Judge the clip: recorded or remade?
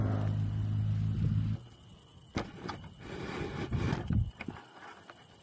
recorded